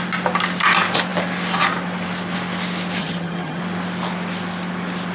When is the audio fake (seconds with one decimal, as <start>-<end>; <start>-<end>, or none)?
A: 3.0-3.6